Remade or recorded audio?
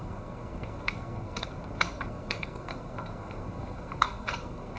remade